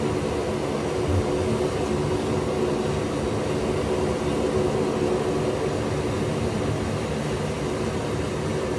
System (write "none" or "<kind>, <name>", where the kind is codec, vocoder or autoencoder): none